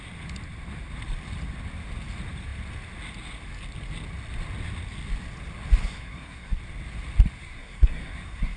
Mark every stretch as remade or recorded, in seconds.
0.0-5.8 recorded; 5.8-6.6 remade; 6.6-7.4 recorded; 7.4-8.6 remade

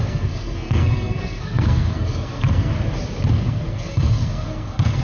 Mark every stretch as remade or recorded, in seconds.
0.0-2.7 remade; 2.7-3.3 recorded; 3.3-5.0 remade